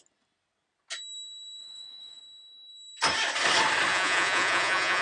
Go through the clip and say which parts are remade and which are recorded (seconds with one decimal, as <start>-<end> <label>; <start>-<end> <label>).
0.0-1.6 recorded; 1.6-2.2 remade; 2.2-3.9 recorded; 3.9-5.0 remade